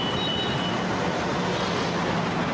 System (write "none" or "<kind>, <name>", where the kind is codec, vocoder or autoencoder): none